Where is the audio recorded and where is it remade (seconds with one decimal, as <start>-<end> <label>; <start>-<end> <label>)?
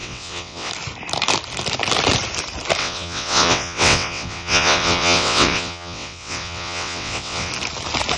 0.0-0.7 remade; 0.7-2.8 recorded; 2.8-7.5 remade; 7.5-8.2 recorded